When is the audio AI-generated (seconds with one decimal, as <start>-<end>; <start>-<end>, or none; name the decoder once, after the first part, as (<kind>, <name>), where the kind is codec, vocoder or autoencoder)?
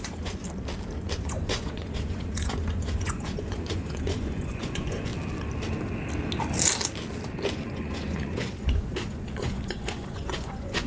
0.0-0.4 (vocoder, Vocos); 1.2-5.1; 7.5-10.9